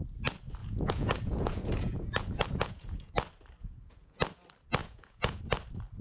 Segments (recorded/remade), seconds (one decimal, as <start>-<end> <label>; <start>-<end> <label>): 0.0-0.6 recorded; 0.6-3.1 remade; 3.1-3.6 recorded; 3.6-4.2 remade; 4.2-4.8 recorded; 4.8-5.4 remade; 5.4-6.0 recorded